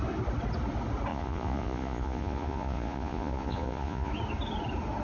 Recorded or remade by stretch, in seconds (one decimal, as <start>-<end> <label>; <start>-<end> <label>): 0.0-1.1 recorded; 1.1-4.1 remade; 4.1-5.0 recorded